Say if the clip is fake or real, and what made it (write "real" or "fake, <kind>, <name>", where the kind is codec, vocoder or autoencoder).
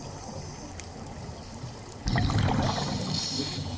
real